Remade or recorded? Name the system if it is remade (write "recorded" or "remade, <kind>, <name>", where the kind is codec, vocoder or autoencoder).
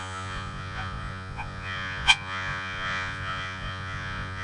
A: remade, vocoder, Vocos